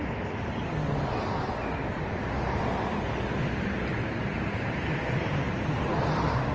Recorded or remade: recorded